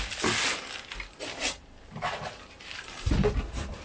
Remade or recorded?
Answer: recorded